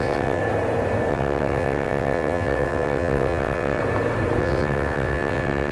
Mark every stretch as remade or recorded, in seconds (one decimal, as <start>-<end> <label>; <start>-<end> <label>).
0.0-0.4 remade; 0.4-1.1 recorded; 1.1-3.8 remade; 3.8-4.4 recorded; 4.4-5.7 remade